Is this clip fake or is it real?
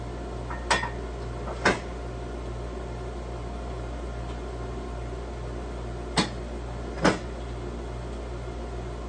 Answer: real